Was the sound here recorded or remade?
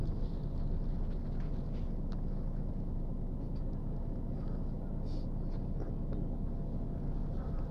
recorded